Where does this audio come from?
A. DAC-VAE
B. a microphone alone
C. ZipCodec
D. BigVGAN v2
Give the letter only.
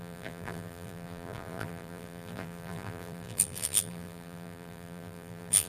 D